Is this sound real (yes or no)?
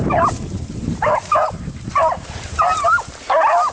no